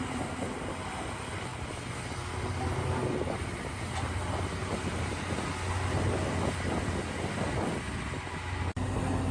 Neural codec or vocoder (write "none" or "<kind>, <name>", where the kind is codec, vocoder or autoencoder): none